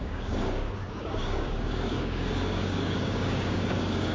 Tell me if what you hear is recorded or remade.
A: remade